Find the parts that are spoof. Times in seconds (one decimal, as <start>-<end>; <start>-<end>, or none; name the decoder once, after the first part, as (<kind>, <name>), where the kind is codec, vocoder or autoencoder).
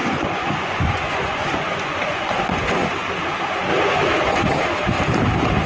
0.0-2.7 (vocoder, Vocos)